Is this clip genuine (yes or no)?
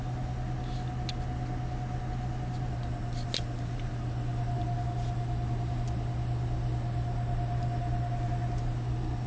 yes